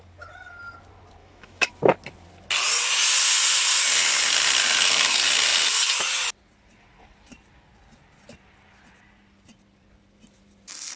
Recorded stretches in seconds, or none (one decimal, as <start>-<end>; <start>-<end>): 0.0-1.2; 1.7-11.0